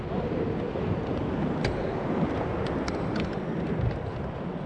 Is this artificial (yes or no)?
no